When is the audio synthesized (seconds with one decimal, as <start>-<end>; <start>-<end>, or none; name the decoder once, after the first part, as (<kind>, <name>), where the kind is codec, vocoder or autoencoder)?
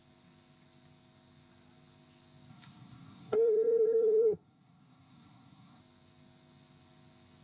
2.5-5.8 (codec, SNAC)